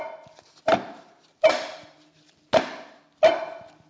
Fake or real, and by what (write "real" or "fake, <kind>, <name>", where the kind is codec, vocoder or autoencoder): real